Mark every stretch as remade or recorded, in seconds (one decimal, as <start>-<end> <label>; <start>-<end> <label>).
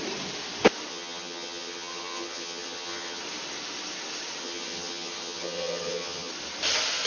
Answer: 0.0-0.9 recorded; 0.9-3.2 remade; 3.2-4.4 recorded; 4.4-6.3 remade; 6.3-7.1 recorded